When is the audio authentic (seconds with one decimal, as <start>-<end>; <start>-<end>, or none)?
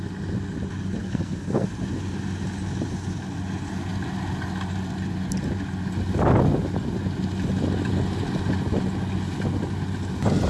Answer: 0.0-1.0; 1.7-10.5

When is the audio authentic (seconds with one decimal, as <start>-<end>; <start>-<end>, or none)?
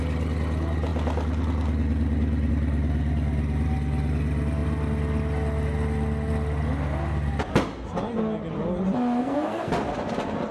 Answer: 0.0-9.2; 9.7-10.5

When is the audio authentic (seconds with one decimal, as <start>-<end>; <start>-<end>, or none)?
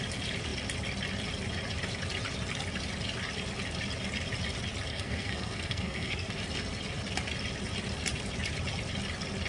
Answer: 0.0-4.9; 6.3-9.5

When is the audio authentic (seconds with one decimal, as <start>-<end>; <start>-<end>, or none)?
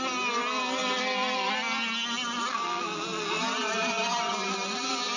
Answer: 0.0-5.2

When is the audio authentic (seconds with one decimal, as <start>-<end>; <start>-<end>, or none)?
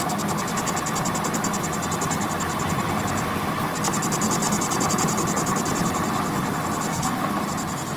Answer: 0.0-6.9; 7.4-8.0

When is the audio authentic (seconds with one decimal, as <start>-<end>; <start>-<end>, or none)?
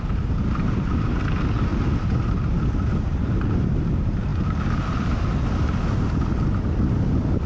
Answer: 0.0-7.5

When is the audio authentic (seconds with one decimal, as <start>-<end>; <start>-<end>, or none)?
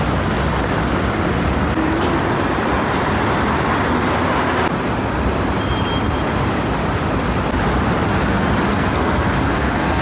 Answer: 0.0-8.7